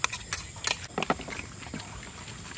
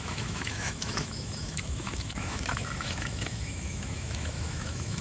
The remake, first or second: second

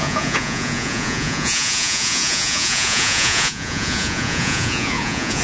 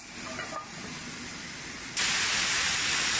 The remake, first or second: first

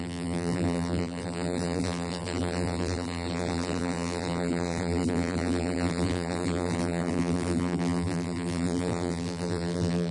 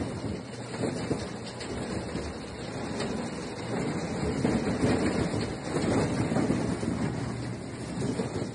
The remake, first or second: first